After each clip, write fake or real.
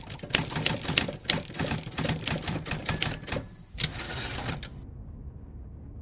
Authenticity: real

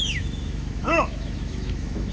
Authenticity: fake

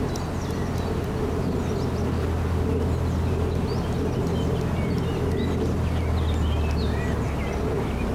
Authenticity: real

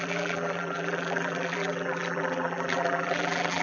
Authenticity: fake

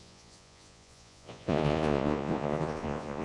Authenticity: fake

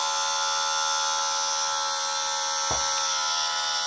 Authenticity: real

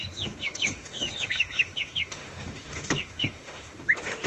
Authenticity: fake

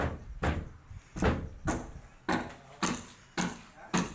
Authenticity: real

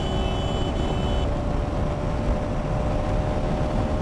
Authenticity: real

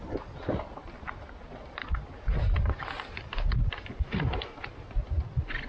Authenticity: real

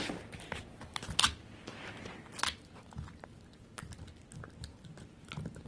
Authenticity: real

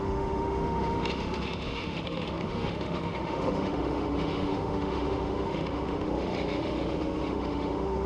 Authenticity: fake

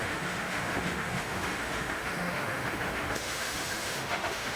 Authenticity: fake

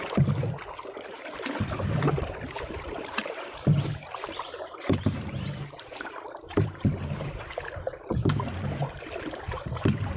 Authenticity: fake